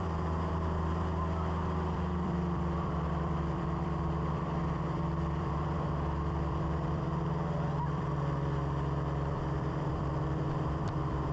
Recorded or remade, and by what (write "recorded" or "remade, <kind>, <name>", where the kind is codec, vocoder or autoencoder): remade, vocoder, BigVGAN v2